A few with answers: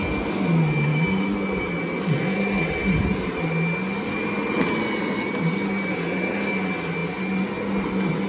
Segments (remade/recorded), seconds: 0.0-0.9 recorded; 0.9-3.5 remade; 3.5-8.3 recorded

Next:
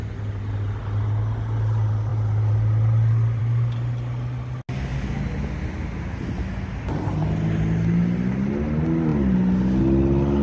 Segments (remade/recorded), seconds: 0.0-10.4 recorded

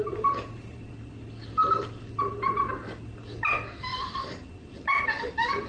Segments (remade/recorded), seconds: 0.0-0.9 remade; 0.9-5.7 recorded

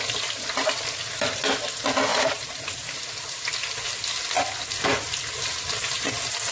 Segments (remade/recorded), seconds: 0.0-2.1 recorded; 2.1-3.0 remade; 3.0-6.5 recorded

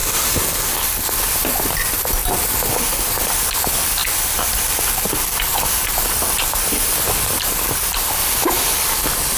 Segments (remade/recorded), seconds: 0.0-4.0 recorded; 4.0-4.9 remade; 4.9-5.5 recorded; 5.5-7.3 remade; 7.3-9.4 recorded

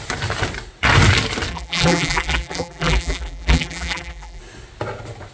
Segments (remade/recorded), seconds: 0.0-1.5 recorded; 1.5-4.4 remade; 4.4-5.3 recorded

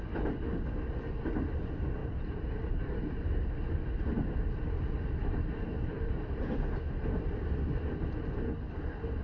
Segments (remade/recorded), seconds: 0.0-2.0 recorded; 2.0-3.5 remade; 3.5-5.2 recorded; 5.2-6.5 remade; 6.5-9.2 recorded

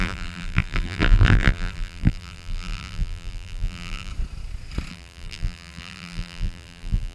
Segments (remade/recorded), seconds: 0.0-4.1 remade; 4.1-4.9 recorded; 4.9-7.1 remade